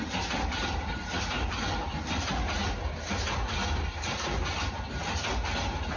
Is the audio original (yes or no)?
yes